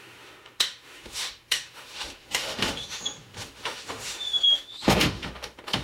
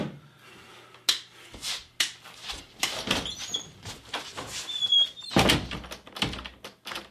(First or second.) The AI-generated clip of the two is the first